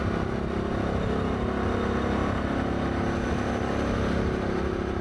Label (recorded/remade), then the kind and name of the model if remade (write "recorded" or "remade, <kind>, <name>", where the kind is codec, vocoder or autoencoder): recorded